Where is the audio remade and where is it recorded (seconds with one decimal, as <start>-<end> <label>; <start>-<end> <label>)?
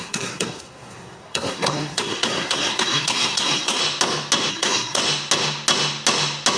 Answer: 0.0-3.8 remade; 3.8-4.5 recorded; 4.5-5.0 remade; 5.0-6.6 recorded